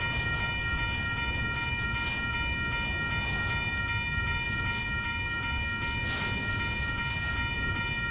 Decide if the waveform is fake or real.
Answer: real